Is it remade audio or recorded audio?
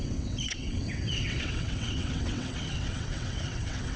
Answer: remade